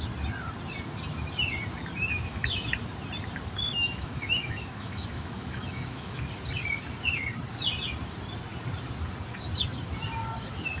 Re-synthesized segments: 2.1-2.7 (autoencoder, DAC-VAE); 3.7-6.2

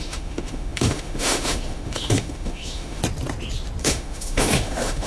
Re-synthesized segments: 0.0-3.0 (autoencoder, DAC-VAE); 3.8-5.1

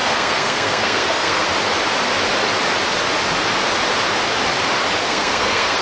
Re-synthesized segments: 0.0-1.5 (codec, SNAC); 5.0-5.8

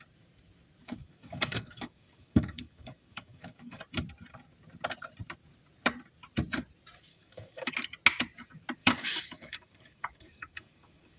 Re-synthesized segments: 0.8-3.8 (codec, DAC); 7.1-7.7; 8.8-11.2